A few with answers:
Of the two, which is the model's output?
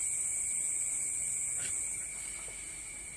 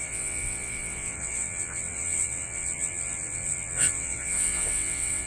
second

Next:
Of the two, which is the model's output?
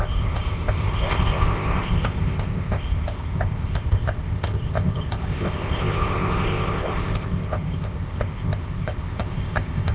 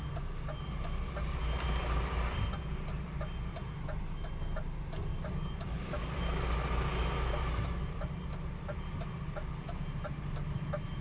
first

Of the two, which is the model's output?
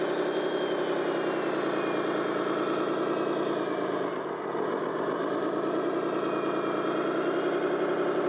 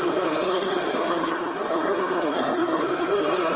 second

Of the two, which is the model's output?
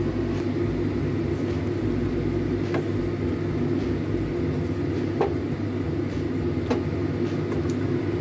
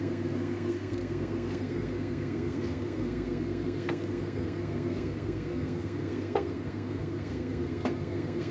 second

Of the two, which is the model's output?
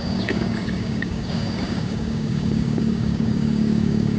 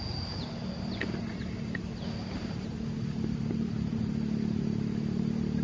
first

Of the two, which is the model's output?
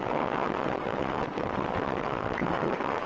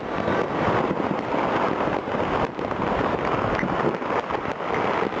first